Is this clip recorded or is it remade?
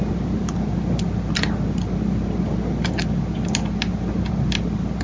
recorded